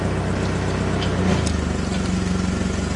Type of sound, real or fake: real